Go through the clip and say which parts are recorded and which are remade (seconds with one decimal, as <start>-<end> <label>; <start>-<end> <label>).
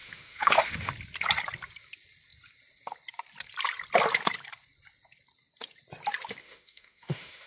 0.0-0.9 remade; 0.9-6.4 recorded; 6.4-7.5 remade